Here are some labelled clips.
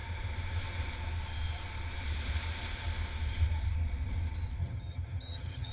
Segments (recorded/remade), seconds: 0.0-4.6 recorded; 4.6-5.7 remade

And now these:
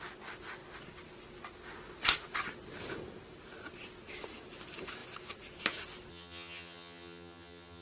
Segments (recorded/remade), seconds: 0.0-6.1 recorded; 6.1-7.8 remade

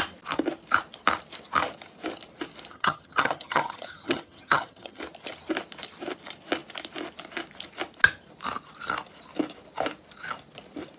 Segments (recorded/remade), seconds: 0.0-2.7 recorded; 2.7-5.0 remade; 5.0-11.0 recorded